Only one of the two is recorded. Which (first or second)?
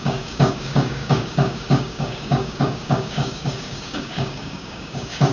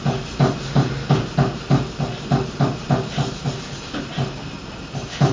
second